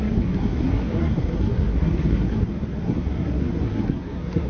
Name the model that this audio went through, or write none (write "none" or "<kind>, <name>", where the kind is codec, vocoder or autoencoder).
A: codec, SNAC